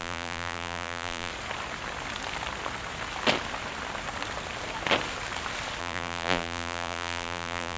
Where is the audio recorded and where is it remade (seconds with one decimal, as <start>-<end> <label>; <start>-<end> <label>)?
0.0-1.3 remade; 1.3-5.8 recorded; 5.8-7.8 remade